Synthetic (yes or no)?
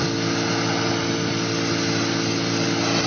no